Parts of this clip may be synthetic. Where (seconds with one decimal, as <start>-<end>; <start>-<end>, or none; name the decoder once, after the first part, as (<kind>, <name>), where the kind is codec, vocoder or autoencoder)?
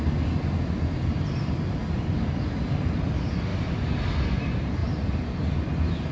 none